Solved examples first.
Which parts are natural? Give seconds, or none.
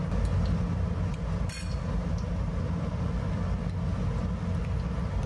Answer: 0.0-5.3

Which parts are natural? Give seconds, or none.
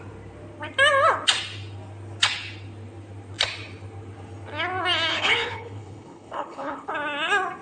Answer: 0.0-5.1; 6.9-7.6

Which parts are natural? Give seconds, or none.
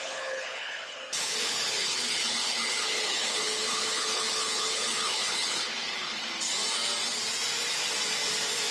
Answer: 6.2-8.7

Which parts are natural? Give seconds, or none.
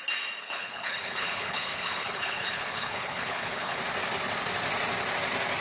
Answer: 0.0-0.4; 3.8-5.6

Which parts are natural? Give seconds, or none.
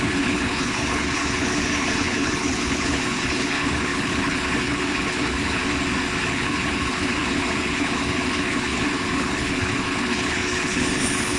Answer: 5.6-6.2